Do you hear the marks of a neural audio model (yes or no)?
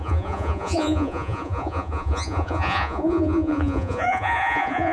yes